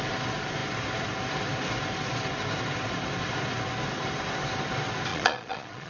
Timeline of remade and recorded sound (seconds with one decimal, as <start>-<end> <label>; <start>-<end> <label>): 0.0-5.1 recorded; 5.1-5.9 remade